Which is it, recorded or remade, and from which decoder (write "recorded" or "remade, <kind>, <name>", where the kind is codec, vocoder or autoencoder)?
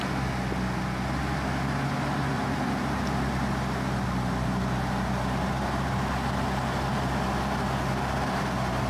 recorded